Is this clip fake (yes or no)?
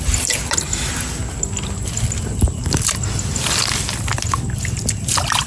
no